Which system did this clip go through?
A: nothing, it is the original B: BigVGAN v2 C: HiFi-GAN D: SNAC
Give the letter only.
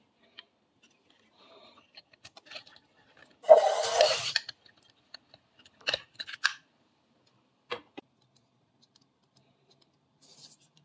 B